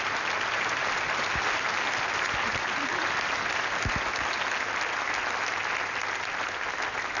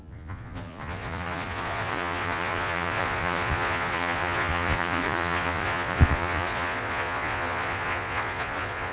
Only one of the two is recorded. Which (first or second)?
first